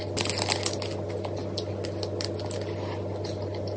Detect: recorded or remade recorded